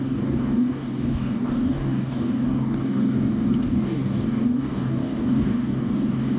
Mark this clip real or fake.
fake